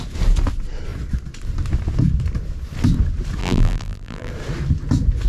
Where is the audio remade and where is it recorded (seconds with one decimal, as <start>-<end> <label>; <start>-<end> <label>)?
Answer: 0.0-3.4 recorded; 3.4-4.3 remade; 4.3-5.3 recorded